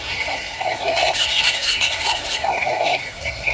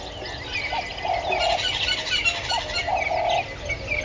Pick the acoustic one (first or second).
second